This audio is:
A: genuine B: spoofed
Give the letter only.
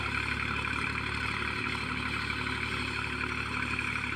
A